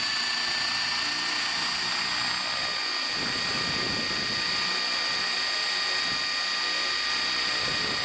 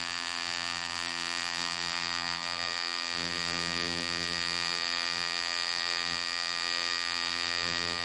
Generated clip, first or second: second